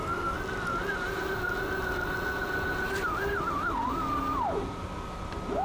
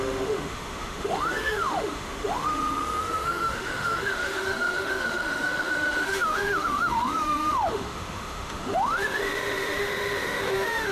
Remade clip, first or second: second